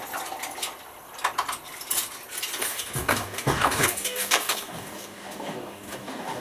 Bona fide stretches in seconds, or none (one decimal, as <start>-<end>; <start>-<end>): 0.0-2.6